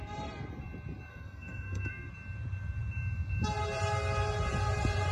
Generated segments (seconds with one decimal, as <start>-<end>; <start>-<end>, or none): 1.1-2.1